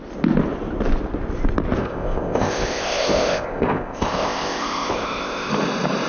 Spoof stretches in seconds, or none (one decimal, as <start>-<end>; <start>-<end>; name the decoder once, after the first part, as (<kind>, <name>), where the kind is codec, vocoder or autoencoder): 1.8-5.5 (codec, ZipCodec)